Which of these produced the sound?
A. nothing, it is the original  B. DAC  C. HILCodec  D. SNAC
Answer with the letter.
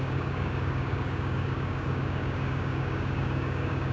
B